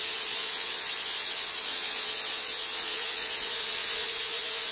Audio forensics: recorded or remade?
remade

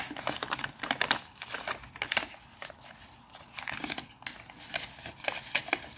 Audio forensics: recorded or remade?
recorded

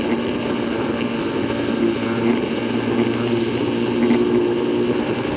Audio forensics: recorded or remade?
recorded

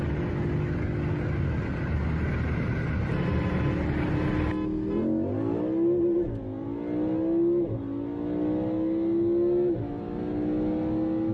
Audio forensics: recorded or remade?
recorded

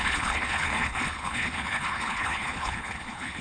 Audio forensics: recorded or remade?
remade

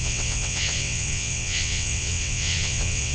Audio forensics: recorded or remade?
remade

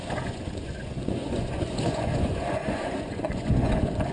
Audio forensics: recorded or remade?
remade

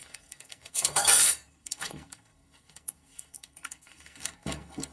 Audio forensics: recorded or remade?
remade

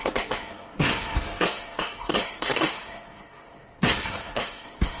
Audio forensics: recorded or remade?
remade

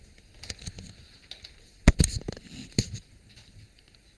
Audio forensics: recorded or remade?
recorded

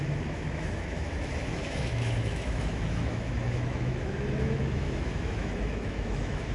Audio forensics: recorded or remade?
remade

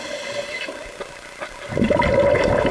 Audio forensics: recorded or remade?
recorded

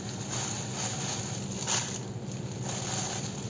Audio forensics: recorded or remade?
recorded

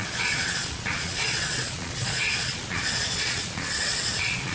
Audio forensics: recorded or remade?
remade